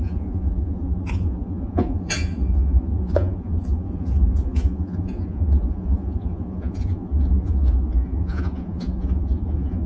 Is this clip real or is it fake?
fake